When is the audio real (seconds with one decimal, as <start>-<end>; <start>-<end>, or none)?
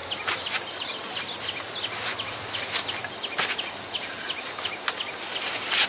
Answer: 0.0-5.9